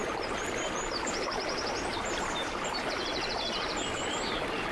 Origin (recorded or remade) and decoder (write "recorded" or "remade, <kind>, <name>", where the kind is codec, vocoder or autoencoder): recorded